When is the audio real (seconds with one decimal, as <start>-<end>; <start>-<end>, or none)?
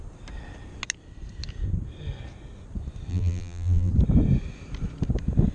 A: 0.0-3.1; 3.9-5.5